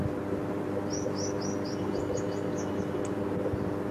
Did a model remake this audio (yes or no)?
no